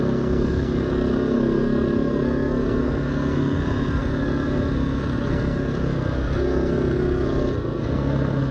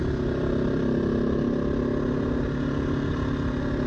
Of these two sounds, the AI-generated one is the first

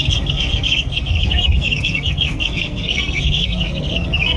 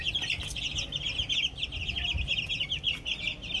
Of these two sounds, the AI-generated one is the first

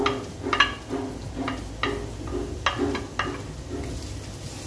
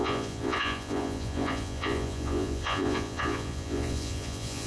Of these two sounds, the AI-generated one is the second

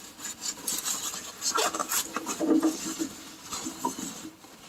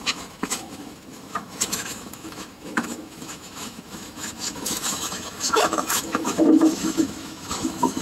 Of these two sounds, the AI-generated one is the second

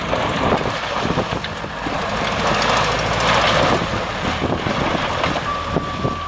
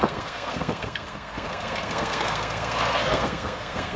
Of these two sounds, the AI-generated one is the second